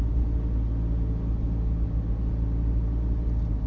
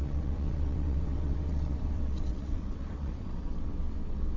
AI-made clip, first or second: second